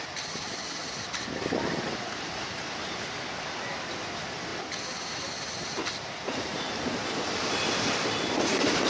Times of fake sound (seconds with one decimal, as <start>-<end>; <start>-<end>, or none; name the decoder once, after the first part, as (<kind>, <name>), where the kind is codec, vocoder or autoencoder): 0.0-4.5 (vocoder, BigVGAN v2); 5.7-6.5; 7.4-8.9